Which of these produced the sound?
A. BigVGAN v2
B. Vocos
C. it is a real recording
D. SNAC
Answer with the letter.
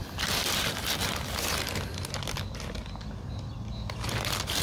C